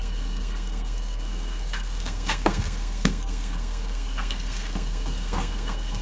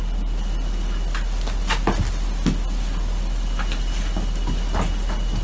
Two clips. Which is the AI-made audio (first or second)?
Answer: first